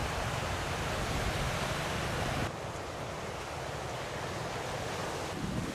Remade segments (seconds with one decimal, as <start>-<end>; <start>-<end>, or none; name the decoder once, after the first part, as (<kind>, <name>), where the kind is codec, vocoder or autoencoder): none